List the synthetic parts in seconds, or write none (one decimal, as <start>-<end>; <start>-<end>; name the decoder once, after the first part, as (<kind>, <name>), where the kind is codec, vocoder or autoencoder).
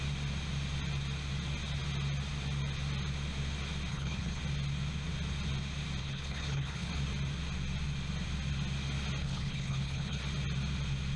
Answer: 3.9-4.4 (codec, HILCodec); 6.0-6.9; 9.2-10.2